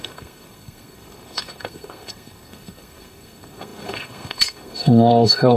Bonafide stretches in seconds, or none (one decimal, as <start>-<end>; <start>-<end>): none